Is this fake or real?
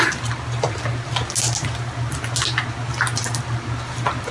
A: real